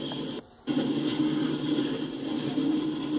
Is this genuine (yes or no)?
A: yes